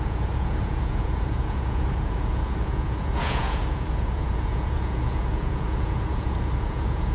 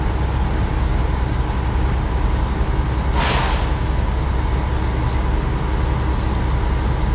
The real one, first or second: second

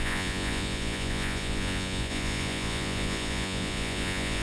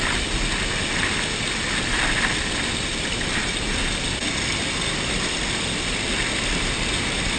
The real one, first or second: second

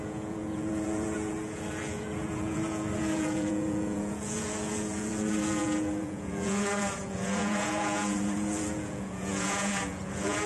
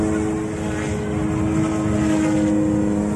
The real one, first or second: second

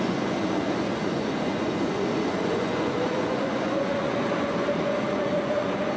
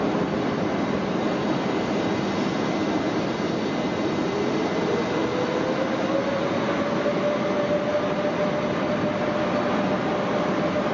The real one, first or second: second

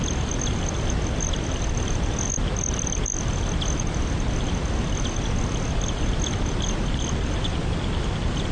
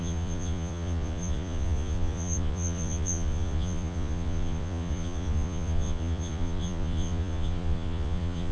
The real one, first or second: first